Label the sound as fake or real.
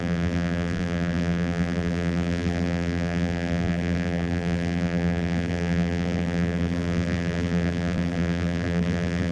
fake